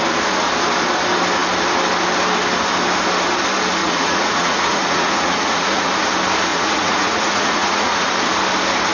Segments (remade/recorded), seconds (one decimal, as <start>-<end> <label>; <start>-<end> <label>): 0.0-3.8 recorded; 3.8-5.9 remade; 5.9-6.5 recorded; 6.5-8.1 remade; 8.1-8.9 recorded